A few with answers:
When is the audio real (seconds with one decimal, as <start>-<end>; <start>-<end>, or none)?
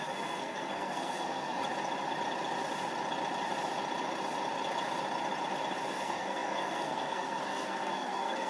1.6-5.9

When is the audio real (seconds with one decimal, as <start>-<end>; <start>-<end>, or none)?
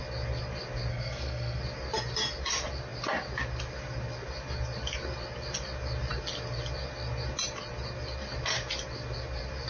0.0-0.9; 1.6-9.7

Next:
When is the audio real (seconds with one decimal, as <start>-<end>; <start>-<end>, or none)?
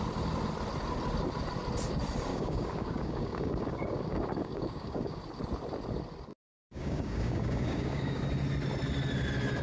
0.0-2.3; 5.2-6.6; 8.2-9.6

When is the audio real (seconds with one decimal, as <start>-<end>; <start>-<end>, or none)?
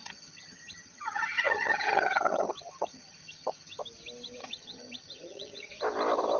3.8-4.4; 5.7-6.4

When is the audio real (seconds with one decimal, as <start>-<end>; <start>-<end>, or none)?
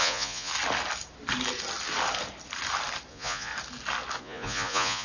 0.5-3.1; 3.5-4.2